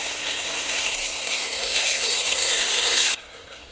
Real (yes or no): no